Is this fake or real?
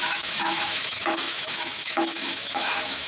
fake